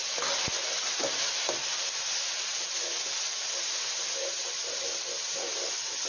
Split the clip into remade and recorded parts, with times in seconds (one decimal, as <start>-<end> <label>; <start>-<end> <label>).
0.0-6.1 recorded

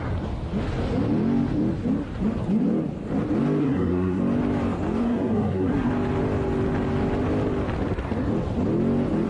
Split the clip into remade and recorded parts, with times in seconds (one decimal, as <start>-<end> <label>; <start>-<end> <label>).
0.0-3.6 recorded; 3.6-4.2 remade; 4.2-5.0 recorded; 5.0-5.9 remade; 5.9-9.3 recorded

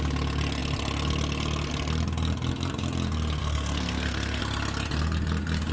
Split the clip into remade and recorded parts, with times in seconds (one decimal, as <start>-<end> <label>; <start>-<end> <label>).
0.0-3.4 recorded; 3.4-4.4 remade; 4.4-5.7 recorded

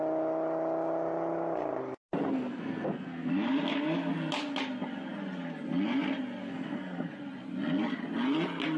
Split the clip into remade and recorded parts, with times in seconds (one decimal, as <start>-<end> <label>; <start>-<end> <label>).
0.0-2.3 recorded; 2.3-3.3 remade; 3.3-6.4 recorded; 6.4-7.1 remade; 7.1-8.8 recorded

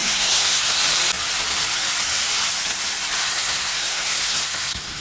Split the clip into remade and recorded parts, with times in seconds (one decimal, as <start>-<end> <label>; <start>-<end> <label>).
0.0-0.8 remade; 0.8-3.2 recorded; 3.2-5.0 remade

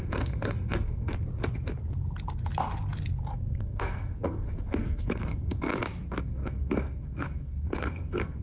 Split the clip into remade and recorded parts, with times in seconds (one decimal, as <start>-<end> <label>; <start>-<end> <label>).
0.0-1.1 remade; 1.1-3.3 recorded; 3.3-5.7 remade; 5.7-6.2 recorded; 6.2-8.4 remade